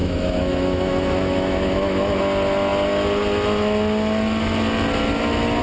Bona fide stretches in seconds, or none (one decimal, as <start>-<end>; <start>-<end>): 2.2-5.6